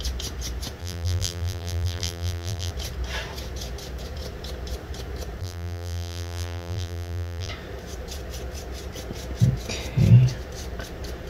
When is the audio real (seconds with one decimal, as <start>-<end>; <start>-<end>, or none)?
0.0-0.8; 2.7-5.4; 7.5-11.3